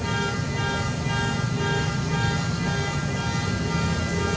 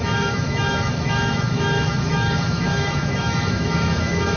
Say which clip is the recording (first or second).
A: first